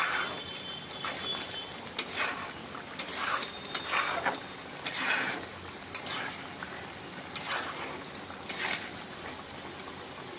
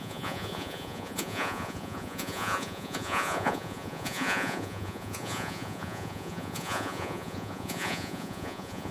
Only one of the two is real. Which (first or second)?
first